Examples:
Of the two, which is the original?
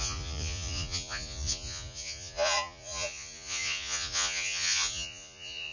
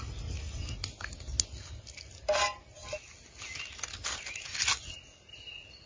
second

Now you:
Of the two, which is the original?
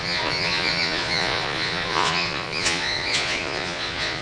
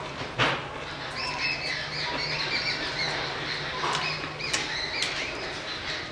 second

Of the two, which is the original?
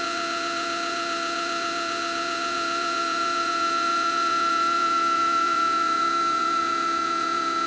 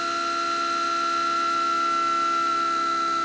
second